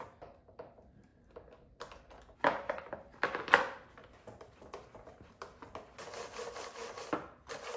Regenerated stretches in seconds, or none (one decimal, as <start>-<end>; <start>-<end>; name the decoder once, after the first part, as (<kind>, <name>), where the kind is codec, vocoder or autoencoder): 4.0-5.3 (vocoder, BigVGAN v2); 6.8-7.8